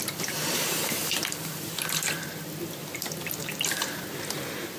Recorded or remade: remade